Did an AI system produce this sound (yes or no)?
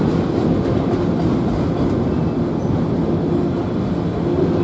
no